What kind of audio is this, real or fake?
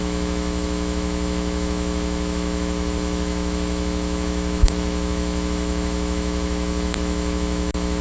fake